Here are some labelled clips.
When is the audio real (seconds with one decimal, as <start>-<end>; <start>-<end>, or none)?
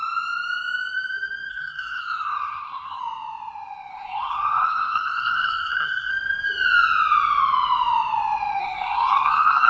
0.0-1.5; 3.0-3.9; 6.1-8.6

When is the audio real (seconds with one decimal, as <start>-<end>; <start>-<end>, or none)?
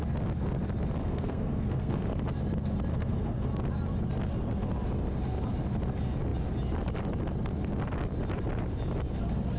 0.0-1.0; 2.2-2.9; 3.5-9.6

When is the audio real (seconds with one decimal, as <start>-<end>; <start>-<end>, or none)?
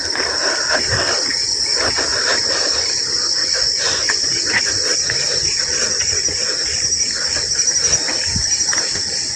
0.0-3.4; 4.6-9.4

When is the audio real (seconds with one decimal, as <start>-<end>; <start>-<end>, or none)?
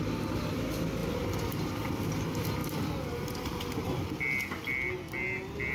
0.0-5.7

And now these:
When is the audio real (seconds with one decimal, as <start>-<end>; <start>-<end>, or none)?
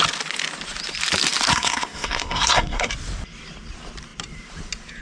0.0-1.5; 2.9-5.0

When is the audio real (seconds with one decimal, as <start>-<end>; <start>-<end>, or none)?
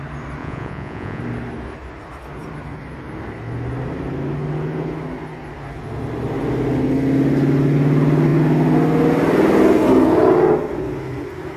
0.0-0.4; 1.2-11.6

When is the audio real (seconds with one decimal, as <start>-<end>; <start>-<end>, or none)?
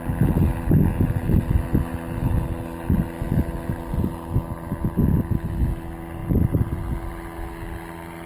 0.0-8.3